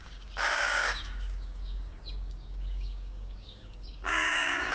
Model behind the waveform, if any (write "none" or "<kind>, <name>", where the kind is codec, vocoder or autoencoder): codec, DAC